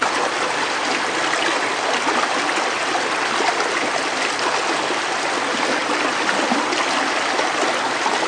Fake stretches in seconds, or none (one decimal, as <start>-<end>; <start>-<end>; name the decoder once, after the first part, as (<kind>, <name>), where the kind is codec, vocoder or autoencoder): none